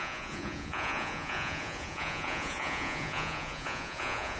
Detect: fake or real fake